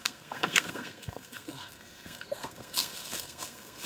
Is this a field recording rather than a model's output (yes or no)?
no